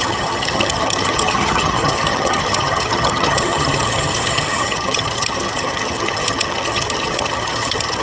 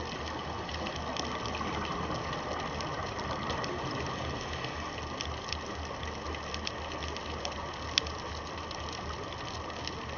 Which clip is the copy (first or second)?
first